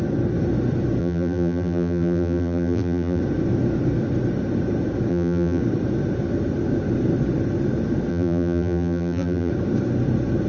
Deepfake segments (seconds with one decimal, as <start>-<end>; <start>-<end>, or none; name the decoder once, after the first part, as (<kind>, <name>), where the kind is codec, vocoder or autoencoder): 1.0-3.2 (vocoder, BigVGAN v2); 5.1-5.6; 8.1-9.5